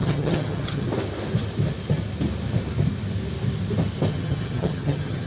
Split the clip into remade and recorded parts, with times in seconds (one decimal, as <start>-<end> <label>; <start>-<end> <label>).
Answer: 0.0-0.9 remade; 0.9-4.1 recorded; 4.1-5.3 remade